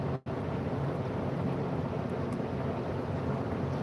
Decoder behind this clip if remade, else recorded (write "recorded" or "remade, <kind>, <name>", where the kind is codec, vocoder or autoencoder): recorded